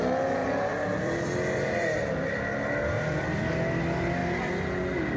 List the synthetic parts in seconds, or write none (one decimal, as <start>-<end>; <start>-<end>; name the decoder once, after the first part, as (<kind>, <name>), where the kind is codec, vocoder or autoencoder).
0.4-3.5 (vocoder, BigVGAN v2)